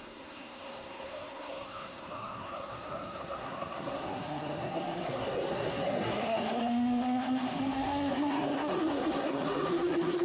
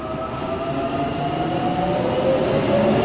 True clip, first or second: second